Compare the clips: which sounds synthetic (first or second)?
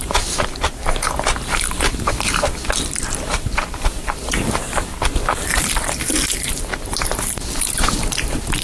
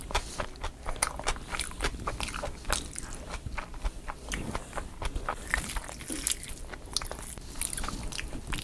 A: first